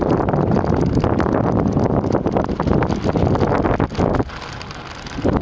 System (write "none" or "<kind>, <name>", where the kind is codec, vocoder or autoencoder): none